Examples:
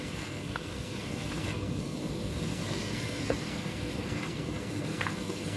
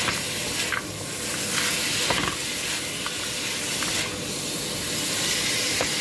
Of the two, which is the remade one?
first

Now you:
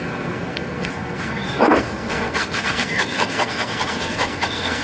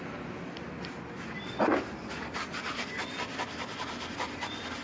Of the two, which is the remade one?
first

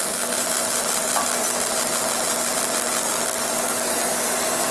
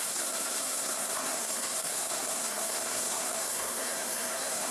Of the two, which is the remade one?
second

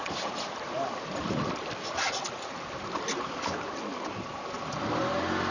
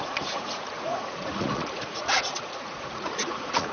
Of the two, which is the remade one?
second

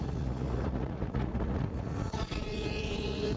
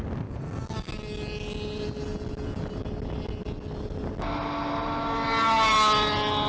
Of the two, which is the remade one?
first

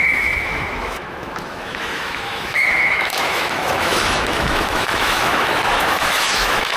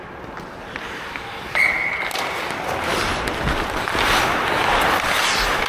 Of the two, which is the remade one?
first